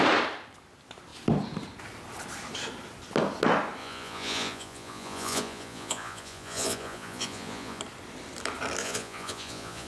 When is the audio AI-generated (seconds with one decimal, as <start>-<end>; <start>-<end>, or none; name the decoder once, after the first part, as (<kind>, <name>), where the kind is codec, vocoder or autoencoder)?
3.8-7.8 (vocoder, Vocos); 8.8-9.9